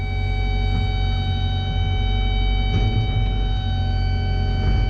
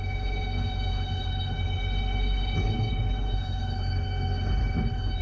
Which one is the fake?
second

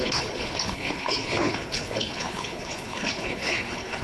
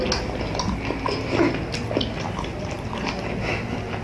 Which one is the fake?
first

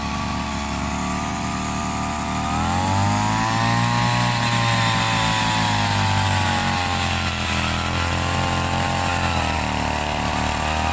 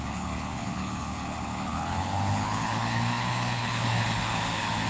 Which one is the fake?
second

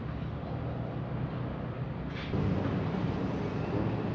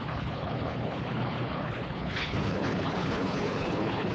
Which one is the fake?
second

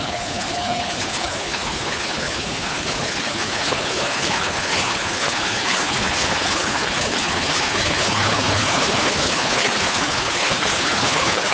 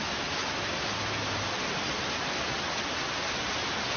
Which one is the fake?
first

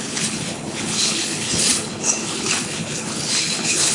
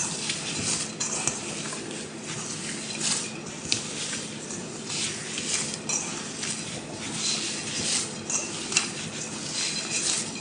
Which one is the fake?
first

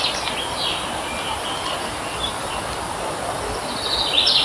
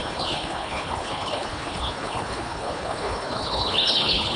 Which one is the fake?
second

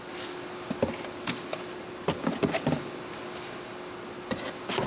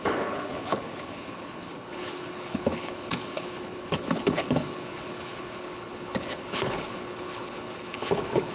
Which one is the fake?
second